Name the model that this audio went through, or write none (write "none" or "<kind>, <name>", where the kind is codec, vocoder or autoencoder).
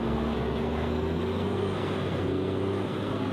codec, SNAC